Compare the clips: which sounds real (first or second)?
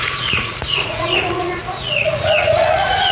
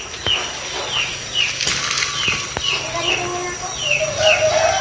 second